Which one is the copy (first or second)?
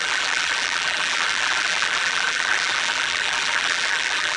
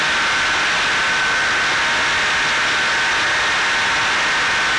first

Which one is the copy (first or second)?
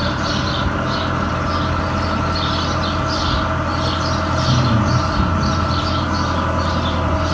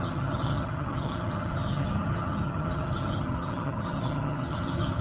second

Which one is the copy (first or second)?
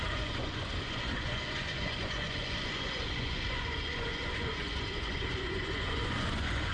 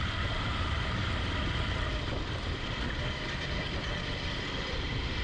first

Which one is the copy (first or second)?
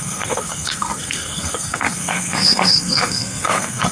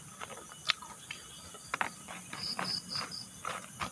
first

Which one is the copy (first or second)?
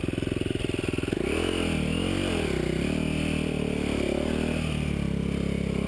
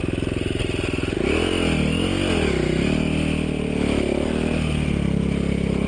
first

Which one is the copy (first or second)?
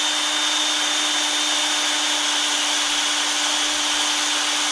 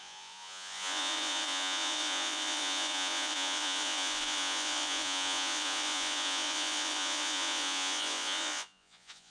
second